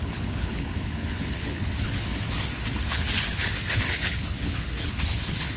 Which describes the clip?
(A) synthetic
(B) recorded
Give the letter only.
A